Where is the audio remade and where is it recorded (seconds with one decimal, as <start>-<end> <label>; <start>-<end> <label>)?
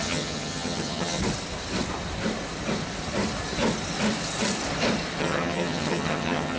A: 0.0-1.2 remade; 1.2-5.2 recorded; 5.2-6.6 remade